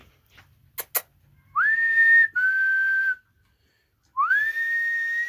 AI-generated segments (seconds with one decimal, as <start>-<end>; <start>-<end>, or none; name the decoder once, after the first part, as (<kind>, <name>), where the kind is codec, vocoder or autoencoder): none